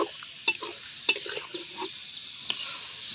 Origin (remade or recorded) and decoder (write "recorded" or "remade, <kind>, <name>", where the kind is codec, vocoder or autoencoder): recorded